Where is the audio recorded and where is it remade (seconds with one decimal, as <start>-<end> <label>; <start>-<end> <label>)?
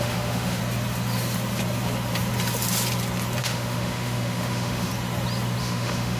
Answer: 0.0-0.6 remade; 0.6-3.4 recorded; 3.4-4.9 remade; 4.9-5.6 recorded; 5.6-6.2 remade